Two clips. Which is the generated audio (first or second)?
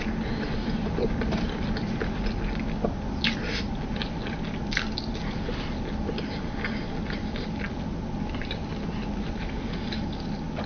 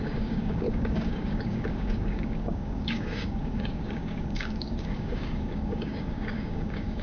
second